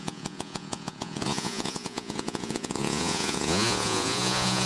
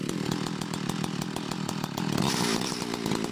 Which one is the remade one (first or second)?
first